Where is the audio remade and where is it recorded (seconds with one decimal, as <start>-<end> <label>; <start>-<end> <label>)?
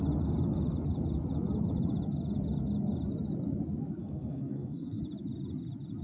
0.0-4.0 recorded; 4.0-5.0 remade; 5.0-6.0 recorded